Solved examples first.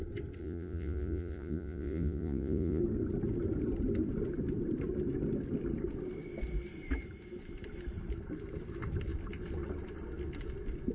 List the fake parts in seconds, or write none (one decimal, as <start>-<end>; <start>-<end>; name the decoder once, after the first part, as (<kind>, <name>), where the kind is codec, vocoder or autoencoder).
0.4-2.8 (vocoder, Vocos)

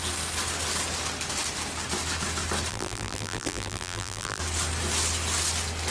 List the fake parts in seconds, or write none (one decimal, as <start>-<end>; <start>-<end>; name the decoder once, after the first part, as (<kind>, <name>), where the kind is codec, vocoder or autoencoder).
2.7-4.4 (vocoder, BigVGAN v2)

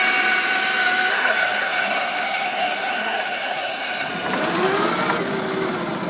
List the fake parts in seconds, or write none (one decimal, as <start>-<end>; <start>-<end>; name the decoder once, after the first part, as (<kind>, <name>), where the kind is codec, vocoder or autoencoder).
1.1-4.1 (codec, SNAC)

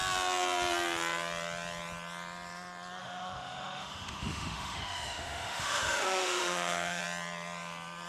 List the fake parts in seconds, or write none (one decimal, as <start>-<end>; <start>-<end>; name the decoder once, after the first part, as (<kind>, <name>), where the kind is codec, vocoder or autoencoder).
3.0-7.0 (autoencoder, DAC-VAE)